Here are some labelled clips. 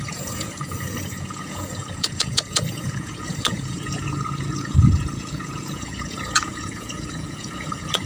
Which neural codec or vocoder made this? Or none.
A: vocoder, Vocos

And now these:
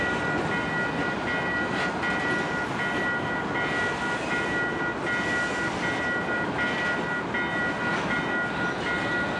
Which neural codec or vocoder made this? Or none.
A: none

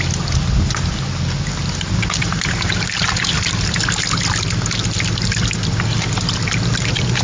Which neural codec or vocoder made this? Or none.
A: none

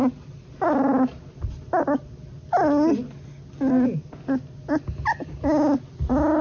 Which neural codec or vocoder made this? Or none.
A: none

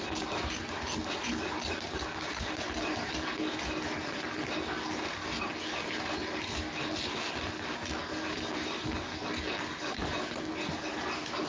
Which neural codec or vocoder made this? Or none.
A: none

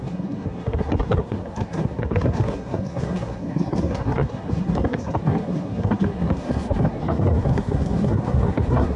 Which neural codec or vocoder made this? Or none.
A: codec, SNAC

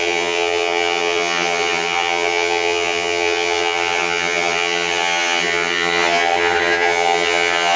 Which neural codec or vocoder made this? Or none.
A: vocoder, HiFi-GAN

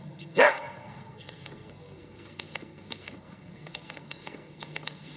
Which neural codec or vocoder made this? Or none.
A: codec, SNAC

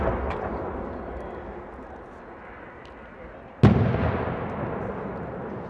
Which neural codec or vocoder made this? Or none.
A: none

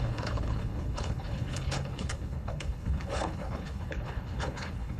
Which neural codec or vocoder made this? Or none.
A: codec, HILCodec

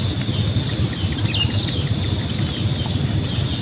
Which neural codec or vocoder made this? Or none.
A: none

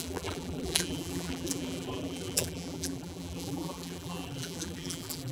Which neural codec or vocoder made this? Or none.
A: vocoder, BigVGAN v2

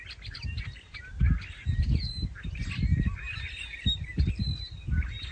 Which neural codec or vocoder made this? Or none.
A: none